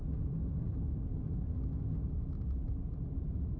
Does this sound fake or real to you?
real